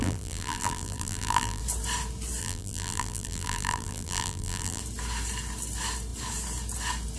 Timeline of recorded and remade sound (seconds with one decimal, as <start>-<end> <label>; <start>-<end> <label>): 0.0-1.6 remade; 1.6-2.4 recorded; 2.4-4.8 remade; 4.8-7.2 recorded